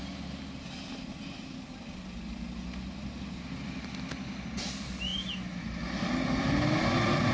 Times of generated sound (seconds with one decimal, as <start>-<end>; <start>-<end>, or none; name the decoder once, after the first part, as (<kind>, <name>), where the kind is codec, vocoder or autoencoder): none